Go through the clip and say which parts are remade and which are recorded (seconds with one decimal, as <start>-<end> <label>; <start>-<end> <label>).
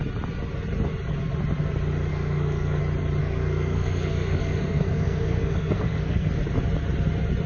0.0-2.1 recorded; 2.1-2.8 remade; 2.8-3.2 recorded; 3.2-6.3 remade; 6.3-7.5 recorded